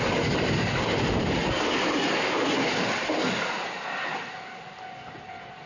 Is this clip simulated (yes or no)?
no